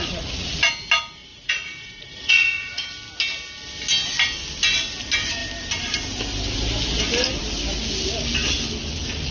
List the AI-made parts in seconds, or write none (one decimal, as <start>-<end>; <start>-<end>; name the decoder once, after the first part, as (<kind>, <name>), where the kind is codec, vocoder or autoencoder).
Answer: 0.0-0.6 (vocoder, Vocos); 1.3-2.8